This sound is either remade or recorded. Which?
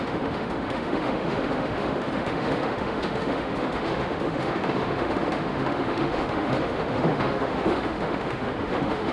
remade